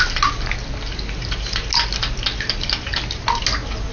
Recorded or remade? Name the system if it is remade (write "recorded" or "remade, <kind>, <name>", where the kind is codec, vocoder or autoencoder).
recorded